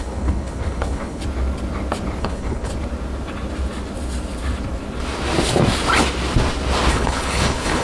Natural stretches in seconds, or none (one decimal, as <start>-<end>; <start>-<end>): 1.2-2.2; 2.7-6.9